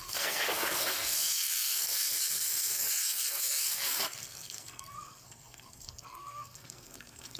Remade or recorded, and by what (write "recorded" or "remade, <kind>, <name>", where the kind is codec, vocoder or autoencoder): remade, codec, SNAC